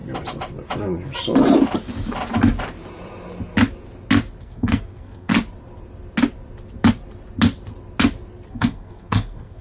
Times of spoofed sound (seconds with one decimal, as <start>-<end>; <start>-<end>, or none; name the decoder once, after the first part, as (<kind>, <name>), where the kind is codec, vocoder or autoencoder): 4.4-5.3 (codec, SNAC); 8.5-9.6

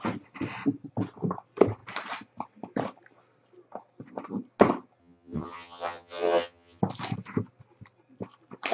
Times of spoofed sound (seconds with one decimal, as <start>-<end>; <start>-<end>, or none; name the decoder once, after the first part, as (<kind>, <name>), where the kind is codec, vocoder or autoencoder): 5.0-6.8 (vocoder, HiFi-GAN)